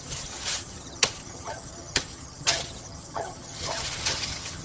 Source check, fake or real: fake